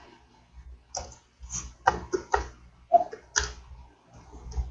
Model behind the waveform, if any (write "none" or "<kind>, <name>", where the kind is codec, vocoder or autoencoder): none